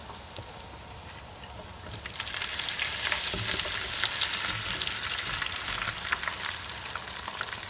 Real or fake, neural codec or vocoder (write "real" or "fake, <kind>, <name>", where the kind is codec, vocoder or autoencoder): real